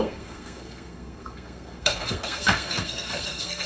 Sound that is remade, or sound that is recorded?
remade